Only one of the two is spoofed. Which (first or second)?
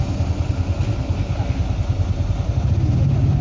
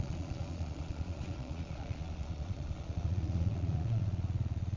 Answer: second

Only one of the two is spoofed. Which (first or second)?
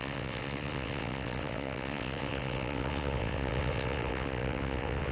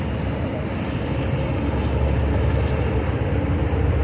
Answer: first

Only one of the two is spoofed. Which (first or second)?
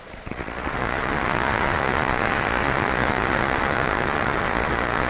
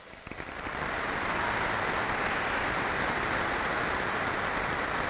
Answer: first